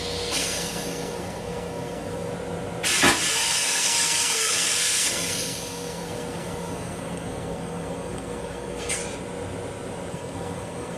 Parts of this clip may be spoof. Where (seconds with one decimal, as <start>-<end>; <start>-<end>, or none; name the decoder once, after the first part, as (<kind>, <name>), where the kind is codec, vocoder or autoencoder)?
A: 0.0-2.3 (codec, SNAC); 3.3-9.0; 10.1-11.0

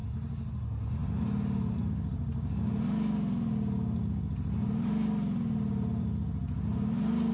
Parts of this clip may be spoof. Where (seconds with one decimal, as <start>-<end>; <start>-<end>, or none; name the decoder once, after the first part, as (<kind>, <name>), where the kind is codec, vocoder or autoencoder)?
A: 0.0-0.5 (vocoder, BigVGAN v2); 1.0-1.9

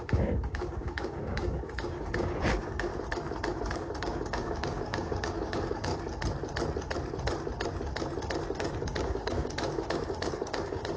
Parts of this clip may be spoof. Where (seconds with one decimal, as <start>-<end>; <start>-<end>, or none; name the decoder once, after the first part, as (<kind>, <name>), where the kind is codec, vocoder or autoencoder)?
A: 0.0-2.9 (codec, DAC); 3.7-5.9; 8.6-11.0

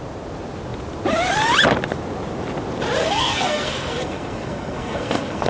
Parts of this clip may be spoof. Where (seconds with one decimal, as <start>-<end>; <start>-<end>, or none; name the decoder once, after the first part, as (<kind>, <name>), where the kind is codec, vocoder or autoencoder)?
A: 3.0-5.5 (codec, SNAC)

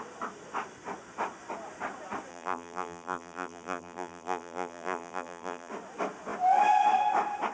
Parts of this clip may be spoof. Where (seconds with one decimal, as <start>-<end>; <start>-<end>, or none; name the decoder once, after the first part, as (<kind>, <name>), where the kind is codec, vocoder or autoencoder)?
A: 2.3-5.7 (vocoder, BigVGAN v2)

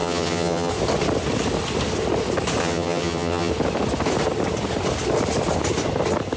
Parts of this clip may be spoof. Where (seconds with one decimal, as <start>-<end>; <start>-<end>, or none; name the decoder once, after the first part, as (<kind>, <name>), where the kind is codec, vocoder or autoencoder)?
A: 0.0-0.7 (vocoder, HiFi-GAN); 2.6-3.5

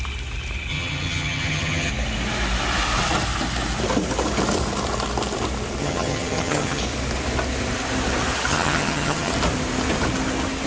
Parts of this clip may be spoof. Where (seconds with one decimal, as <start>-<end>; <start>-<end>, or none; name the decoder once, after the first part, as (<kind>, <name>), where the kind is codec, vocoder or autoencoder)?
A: 0.7-1.9 (vocoder, HiFi-GAN); 5.8-6.8; 8.5-9.3

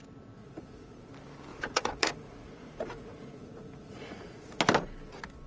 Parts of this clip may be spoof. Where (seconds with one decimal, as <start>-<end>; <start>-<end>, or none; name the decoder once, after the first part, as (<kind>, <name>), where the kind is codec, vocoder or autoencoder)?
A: 0.4-1.0 (vocoder, Vocos); 1.5-4.6